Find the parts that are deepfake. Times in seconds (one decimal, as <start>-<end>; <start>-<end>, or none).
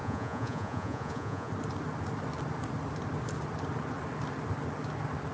0.0-1.5